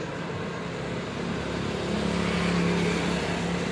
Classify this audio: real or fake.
real